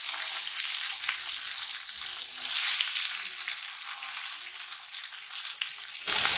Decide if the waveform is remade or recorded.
recorded